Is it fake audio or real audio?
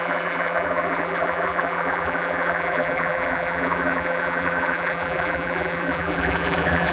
fake